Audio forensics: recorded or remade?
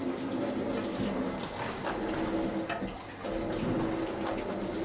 recorded